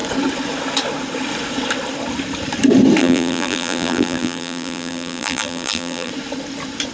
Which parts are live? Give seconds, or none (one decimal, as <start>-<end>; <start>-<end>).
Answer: 0.0-3.0; 6.1-6.9